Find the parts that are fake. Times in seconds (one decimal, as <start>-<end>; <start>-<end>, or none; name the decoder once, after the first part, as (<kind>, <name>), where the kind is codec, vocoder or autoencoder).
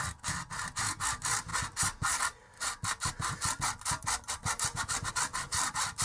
none